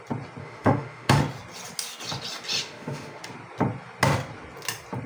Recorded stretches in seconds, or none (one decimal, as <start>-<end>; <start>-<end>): 0.0-0.4; 1.2-2.6; 3.2-5.1